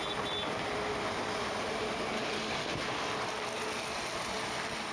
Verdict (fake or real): real